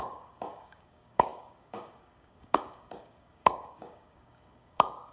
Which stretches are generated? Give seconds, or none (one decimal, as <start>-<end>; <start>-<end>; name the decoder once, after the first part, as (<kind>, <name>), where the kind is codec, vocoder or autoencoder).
0.0-5.1 (codec, DAC)